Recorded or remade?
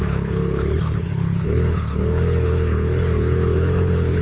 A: remade